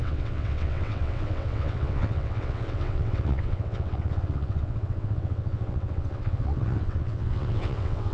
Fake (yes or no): yes